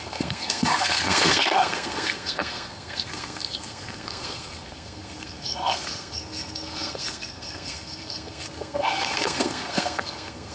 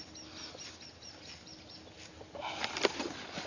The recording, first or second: second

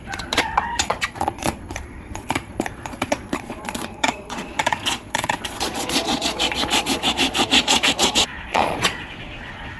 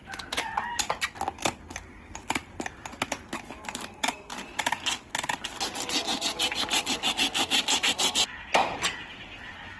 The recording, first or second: second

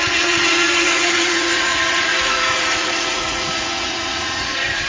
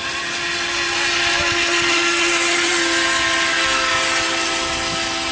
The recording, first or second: second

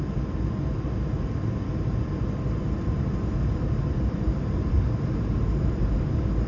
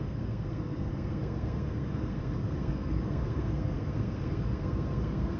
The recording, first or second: first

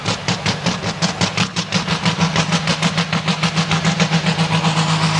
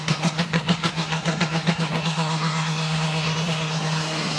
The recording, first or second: first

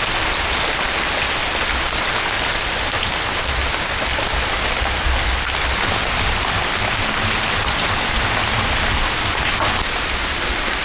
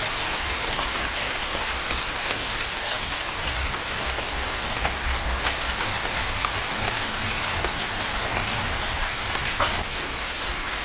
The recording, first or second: first